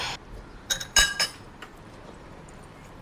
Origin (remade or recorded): remade